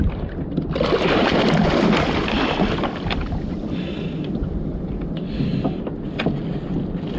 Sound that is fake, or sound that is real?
real